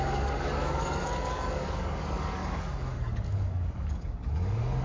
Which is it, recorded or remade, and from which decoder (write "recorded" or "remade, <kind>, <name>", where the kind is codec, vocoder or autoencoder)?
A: remade, codec, DAC